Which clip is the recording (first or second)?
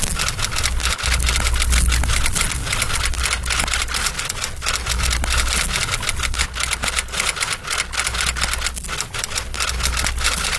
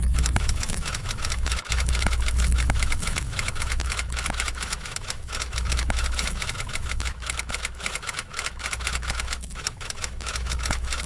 first